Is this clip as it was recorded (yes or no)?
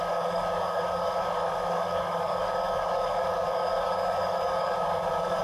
no